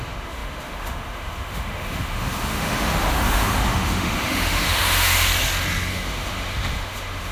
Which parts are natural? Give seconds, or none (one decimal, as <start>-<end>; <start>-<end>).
5.3-5.9